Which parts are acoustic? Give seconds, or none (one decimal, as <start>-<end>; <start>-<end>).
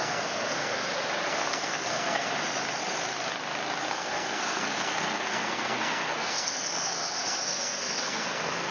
0.8-1.3; 2.3-3.9